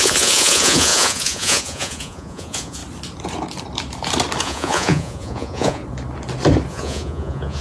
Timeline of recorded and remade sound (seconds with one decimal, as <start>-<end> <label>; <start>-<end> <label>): 0.0-2.8 remade; 2.8-4.4 recorded; 4.4-5.8 remade; 5.8-6.7 recorded; 6.7-7.6 remade